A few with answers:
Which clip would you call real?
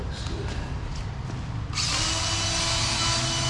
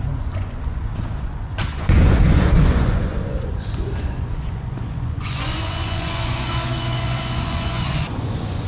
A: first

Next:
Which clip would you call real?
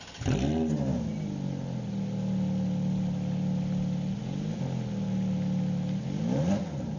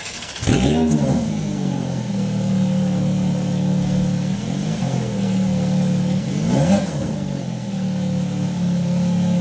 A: first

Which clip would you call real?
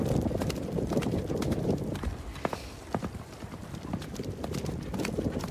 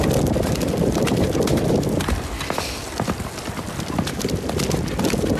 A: second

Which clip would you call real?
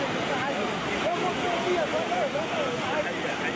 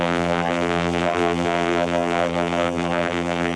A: first